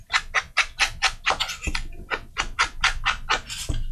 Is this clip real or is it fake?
real